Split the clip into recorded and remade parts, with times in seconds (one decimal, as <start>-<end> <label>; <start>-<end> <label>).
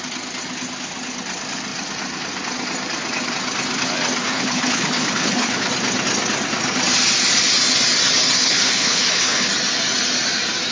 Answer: 0.0-4.2 recorded; 4.2-5.7 remade; 5.7-8.4 recorded; 8.4-9.5 remade; 9.5-10.7 recorded